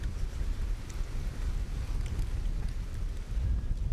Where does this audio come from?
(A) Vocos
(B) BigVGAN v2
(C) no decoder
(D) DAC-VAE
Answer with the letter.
C